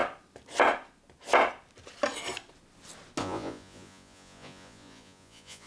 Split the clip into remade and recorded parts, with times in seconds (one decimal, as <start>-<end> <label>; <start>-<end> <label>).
0.0-3.2 recorded; 3.2-5.7 remade